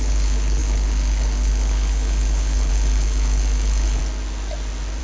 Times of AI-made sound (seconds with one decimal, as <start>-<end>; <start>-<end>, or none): 0.0-4.0